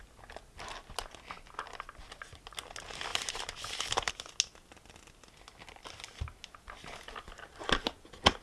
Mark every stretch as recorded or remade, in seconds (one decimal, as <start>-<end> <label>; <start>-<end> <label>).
0.0-8.4 recorded